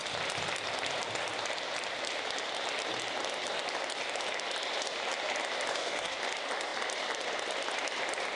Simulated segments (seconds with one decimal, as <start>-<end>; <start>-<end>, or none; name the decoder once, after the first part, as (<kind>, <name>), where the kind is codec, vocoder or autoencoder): 5.7-6.2 (codec, DAC)